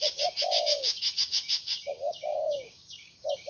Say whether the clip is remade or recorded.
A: remade